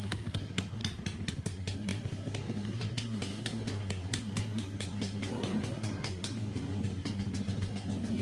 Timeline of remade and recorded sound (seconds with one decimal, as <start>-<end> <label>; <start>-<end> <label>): 0.0-0.8 remade; 0.8-1.3 recorded; 1.3-8.2 remade